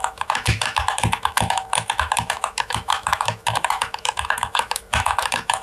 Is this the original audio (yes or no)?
no